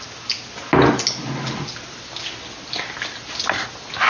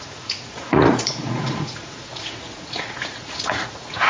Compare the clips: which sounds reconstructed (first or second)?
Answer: second